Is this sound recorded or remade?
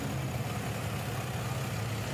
recorded